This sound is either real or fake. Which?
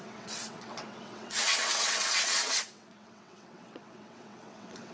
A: fake